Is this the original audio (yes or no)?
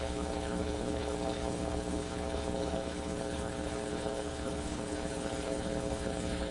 no